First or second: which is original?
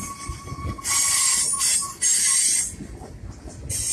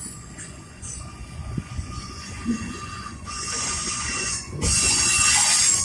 first